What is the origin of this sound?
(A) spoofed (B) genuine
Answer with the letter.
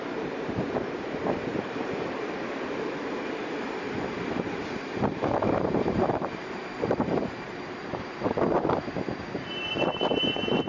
A